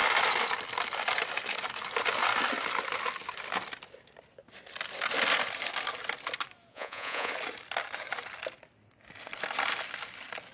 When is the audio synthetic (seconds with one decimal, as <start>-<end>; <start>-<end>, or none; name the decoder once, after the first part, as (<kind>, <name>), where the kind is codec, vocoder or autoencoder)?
6.7-7.3 (vocoder, Vocos)